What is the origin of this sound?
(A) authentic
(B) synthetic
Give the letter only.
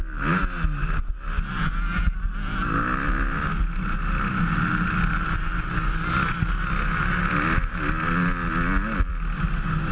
A